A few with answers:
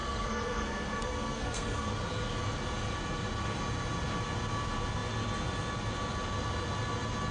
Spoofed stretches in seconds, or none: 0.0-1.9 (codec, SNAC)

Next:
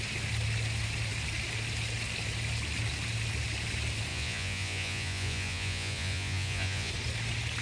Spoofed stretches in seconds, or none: 4.1-6.9 (vocoder, Vocos)